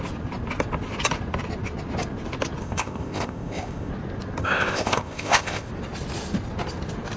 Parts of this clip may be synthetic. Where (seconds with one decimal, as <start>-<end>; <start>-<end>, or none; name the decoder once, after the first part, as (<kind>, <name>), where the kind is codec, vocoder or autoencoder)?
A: 2.6-3.9 (codec, ZipCodec); 4.4-5.7